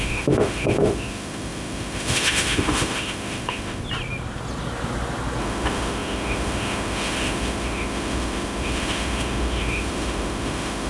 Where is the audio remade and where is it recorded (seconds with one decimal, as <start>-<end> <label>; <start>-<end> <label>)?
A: 0.0-3.8 remade; 3.8-5.4 recorded; 5.4-10.9 remade